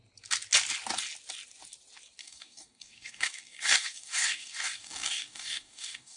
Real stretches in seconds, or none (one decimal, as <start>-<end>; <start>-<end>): 0.0-2.2